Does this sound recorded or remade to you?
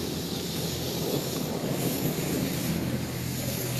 remade